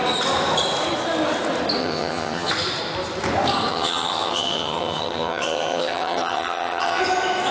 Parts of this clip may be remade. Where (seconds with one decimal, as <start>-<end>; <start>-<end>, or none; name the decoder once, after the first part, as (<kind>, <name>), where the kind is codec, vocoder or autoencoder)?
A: 1.8-2.5 (vocoder, HiFi-GAN); 3.7-7.0